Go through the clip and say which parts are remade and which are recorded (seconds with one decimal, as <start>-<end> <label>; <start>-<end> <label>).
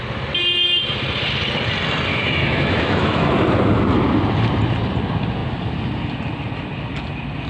0.0-2.1 recorded; 2.1-3.3 remade; 3.3-7.5 recorded